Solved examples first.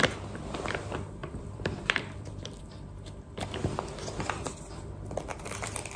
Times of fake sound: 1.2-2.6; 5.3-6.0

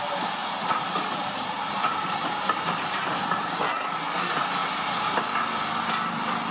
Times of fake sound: 0.4-3.6

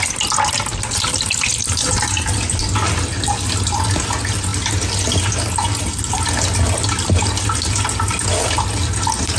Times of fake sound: none

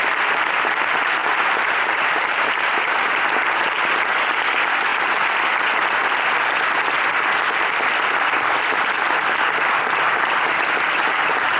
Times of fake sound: 1.2-3.2

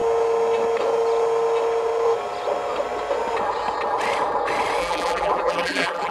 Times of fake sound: 4.8-6.1

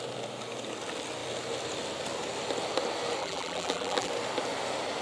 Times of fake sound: 3.2-4.1

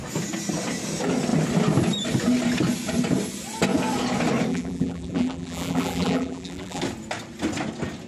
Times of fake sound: 4.5-6.8

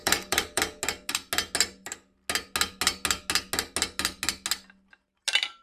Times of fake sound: 0.0-0.6